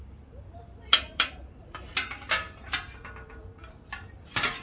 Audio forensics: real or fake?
fake